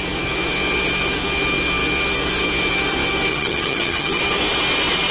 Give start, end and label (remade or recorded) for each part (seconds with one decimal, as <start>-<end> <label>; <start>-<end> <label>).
0.0-3.3 recorded; 3.3-4.2 remade; 4.2-5.1 recorded

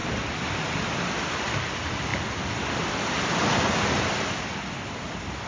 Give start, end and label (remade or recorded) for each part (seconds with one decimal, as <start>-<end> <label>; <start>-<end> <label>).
0.0-5.5 recorded

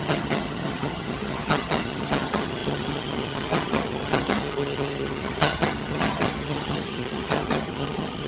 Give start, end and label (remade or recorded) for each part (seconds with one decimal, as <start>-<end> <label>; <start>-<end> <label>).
0.0-8.3 remade

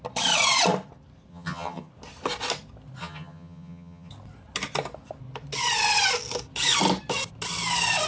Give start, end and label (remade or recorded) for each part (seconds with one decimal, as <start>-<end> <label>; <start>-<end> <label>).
0.0-1.3 recorded; 1.3-1.9 remade; 1.9-3.0 recorded; 3.0-4.1 remade; 4.1-8.1 recorded

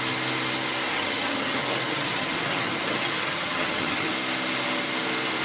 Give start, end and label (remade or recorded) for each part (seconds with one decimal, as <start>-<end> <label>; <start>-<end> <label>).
0.0-0.9 recorded; 0.9-4.1 remade; 4.1-5.4 recorded

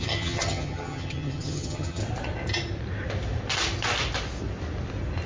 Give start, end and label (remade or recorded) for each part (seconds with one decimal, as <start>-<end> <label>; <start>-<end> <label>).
0.0-2.0 remade; 2.0-5.3 recorded

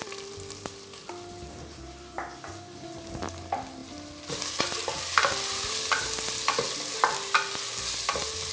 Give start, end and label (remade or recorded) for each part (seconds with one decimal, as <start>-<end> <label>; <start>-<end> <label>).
0.0-8.5 recorded

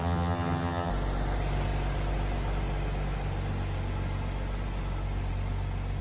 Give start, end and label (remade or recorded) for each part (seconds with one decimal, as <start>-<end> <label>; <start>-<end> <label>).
0.0-0.9 remade; 0.9-6.0 recorded